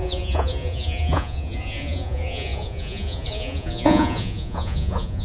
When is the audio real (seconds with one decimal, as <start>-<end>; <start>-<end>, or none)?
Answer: none